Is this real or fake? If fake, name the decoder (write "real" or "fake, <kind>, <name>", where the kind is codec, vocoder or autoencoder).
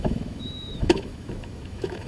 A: fake, autoencoder, DAC-VAE